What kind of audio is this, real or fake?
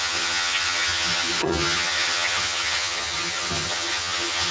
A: fake